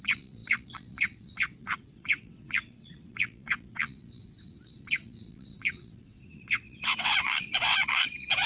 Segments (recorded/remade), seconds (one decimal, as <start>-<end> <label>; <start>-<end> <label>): 0.0-8.5 remade

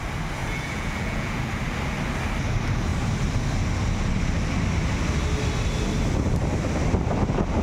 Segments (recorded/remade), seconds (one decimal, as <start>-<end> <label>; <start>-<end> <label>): 0.0-0.4 recorded; 0.4-1.4 remade; 1.4-7.6 recorded

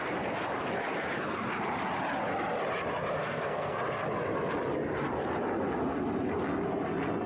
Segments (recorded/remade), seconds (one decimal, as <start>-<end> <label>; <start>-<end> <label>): 0.0-3.2 recorded; 3.2-3.8 remade; 3.8-7.3 recorded

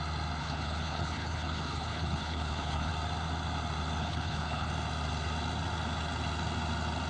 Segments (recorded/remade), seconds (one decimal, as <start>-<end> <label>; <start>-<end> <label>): 0.0-0.4 recorded; 0.4-2.9 remade; 2.9-4.0 recorded; 4.0-4.7 remade; 4.7-7.1 recorded

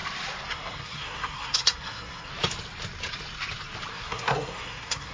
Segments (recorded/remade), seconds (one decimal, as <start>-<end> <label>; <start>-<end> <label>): 0.0-0.5 recorded; 0.5-2.3 remade; 2.3-3.9 recorded; 3.9-5.1 remade

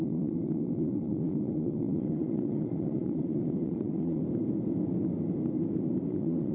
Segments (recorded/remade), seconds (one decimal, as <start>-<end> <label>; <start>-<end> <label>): 0.0-4.2 remade; 4.2-6.1 recorded; 6.1-6.5 remade